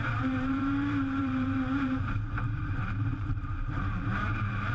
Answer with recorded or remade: remade